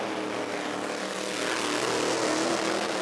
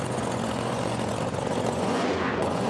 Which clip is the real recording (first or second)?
first